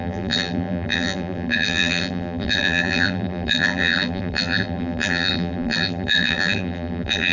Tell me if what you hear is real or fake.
fake